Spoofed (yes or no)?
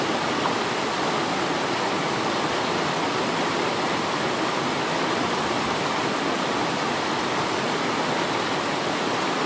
no